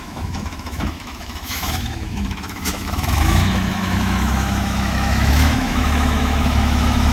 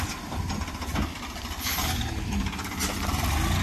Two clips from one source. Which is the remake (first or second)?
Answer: first